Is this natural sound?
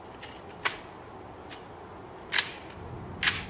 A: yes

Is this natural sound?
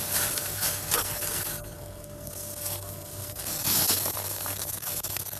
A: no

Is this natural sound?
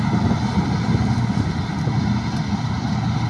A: yes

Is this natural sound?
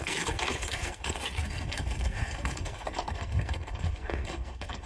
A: no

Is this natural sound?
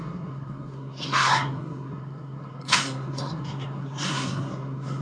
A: no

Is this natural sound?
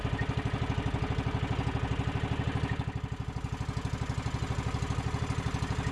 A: yes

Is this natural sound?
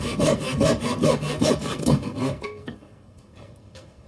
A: no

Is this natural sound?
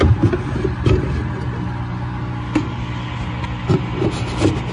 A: yes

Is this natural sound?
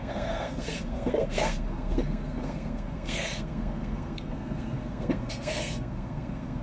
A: no